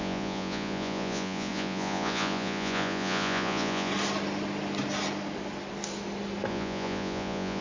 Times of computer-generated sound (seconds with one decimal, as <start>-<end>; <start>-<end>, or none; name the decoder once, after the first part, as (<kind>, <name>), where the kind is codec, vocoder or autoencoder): 0.0-3.9 (vocoder, Vocos); 6.5-7.6

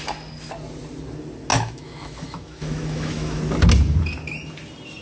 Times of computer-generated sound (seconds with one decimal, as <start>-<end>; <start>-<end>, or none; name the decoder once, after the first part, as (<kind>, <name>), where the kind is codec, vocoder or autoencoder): 1.5-3.4 (autoencoder, DAC-VAE)

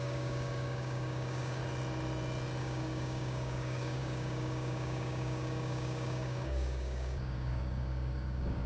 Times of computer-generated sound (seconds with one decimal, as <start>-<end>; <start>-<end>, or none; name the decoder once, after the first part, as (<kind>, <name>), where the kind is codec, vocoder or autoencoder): 0.0-1.6 (codec, DAC); 2.6-8.7

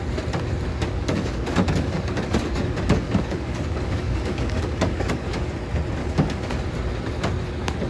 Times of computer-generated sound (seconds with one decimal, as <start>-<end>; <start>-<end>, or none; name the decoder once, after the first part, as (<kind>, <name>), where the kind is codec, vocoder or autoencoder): 0.7-5.4 (codec, DAC); 6.0-6.5